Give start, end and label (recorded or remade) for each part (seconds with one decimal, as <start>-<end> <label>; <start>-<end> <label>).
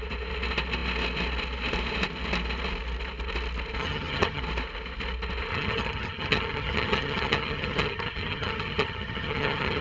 0.0-3.8 recorded; 3.8-4.4 remade; 4.4-5.5 recorded; 5.5-9.8 remade